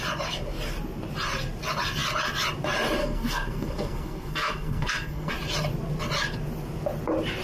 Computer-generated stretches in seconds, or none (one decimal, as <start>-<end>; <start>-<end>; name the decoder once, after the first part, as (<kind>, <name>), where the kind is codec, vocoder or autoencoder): 3.0-5.3 (codec, SNAC)